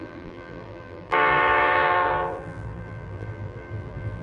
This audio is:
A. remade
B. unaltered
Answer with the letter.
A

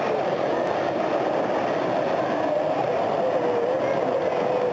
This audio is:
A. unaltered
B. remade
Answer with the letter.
A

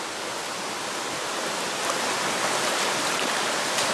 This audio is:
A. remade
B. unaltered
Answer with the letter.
B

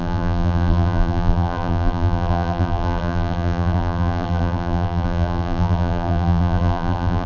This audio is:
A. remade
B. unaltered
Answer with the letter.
A